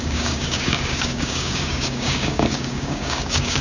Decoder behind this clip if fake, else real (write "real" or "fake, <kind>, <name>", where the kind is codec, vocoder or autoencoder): fake, codec, DAC